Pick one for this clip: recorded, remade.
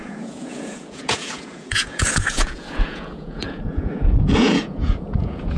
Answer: remade